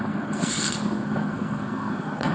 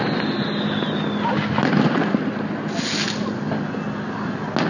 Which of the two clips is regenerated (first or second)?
first